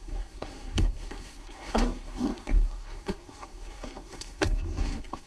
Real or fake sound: fake